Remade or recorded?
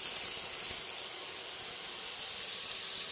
recorded